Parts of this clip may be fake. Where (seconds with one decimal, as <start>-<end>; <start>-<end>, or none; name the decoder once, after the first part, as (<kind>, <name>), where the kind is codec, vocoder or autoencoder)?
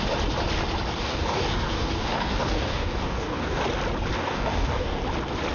1.0-3.6 (codec, DAC); 4.1-5.0